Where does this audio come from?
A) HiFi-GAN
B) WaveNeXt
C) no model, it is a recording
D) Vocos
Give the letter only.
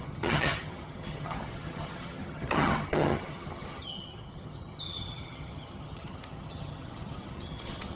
A